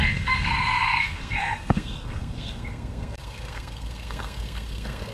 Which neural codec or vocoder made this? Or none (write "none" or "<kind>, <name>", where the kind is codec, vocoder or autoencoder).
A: codec, SNAC